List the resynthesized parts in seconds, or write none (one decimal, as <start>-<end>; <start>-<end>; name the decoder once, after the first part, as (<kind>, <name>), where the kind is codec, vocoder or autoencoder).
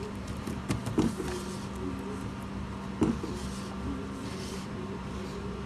0.0-0.6 (vocoder, BigVGAN v2); 4.0-5.7